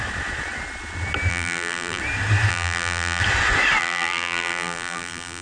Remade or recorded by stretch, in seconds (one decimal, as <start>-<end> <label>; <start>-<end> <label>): 0.0-1.3 recorded; 1.3-2.0 remade; 2.0-2.5 recorded; 2.5-3.2 remade; 3.2-3.8 recorded; 3.8-5.4 remade